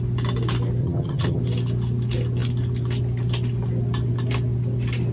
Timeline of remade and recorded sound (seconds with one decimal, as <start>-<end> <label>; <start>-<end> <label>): 0.0-0.8 recorded; 0.8-1.4 remade; 1.4-5.1 recorded